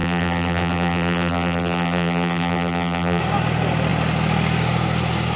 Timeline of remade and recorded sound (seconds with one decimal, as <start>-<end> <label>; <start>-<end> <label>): 0.0-3.2 remade; 3.2-5.4 recorded

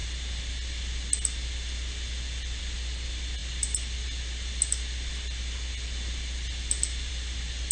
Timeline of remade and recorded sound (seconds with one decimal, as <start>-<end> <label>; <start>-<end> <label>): 0.0-7.7 recorded

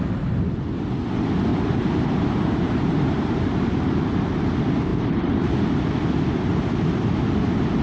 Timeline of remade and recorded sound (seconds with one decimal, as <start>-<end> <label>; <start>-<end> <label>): 0.0-1.5 recorded; 1.5-3.9 remade; 3.9-4.9 recorded; 4.9-5.5 remade; 5.5-7.8 recorded